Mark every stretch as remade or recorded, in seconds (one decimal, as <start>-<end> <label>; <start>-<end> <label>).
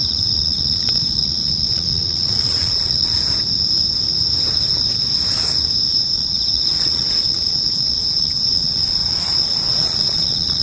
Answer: 0.0-3.1 remade; 3.1-5.9 recorded; 5.9-10.6 remade